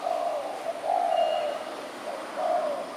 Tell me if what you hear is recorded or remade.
recorded